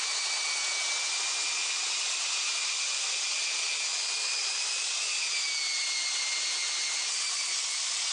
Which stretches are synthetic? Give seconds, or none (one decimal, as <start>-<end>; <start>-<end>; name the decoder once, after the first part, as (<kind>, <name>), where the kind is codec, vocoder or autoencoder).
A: 1.6-3.1 (vocoder, BigVGAN v2); 3.9-5.0